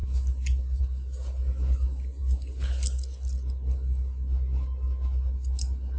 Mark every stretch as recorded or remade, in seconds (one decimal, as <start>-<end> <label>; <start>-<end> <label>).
0.0-6.0 recorded